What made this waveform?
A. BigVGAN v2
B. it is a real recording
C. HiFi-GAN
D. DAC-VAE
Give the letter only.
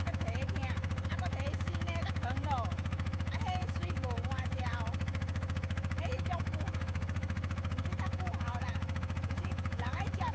D